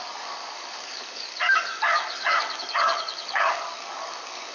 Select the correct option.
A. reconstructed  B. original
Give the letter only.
A